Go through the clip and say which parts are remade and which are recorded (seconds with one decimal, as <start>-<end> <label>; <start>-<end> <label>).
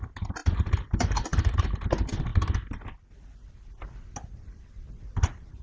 0.0-0.4 recorded; 0.4-1.6 remade; 1.6-5.6 recorded